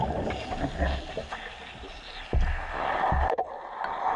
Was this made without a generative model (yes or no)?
yes